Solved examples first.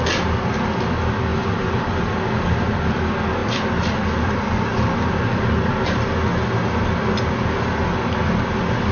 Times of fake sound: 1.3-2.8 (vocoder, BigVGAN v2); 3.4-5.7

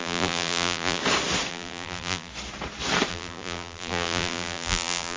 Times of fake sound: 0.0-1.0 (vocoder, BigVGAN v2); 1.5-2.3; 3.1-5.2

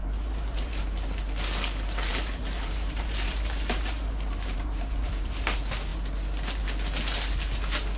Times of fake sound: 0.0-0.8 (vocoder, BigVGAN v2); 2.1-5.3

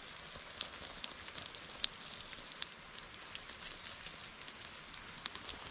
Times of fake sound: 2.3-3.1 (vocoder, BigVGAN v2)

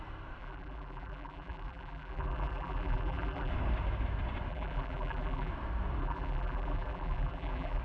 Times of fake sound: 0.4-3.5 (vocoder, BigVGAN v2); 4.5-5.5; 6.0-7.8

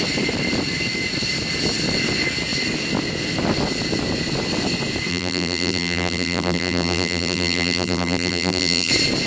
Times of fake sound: 5.1-8.9 (vocoder, BigVGAN v2)

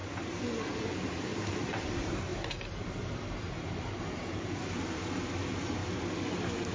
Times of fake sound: 0.0-5.8 (vocoder, BigVGAN v2)

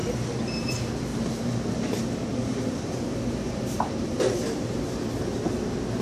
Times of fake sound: 1.1-1.7 (vocoder, BigVGAN v2); 2.3-5.0